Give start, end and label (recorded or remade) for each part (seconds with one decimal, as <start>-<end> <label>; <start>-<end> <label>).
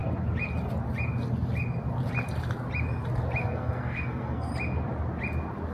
0.0-3.4 recorded; 3.4-4.5 remade; 4.5-5.7 recorded